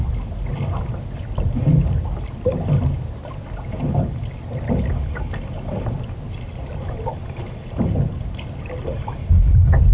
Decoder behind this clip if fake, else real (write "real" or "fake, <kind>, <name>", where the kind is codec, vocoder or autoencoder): real